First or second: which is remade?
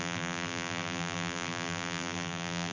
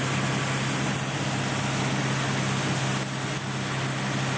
first